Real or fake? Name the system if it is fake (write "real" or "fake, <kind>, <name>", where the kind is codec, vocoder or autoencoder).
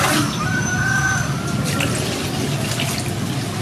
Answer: real